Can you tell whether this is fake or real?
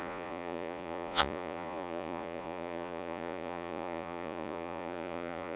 fake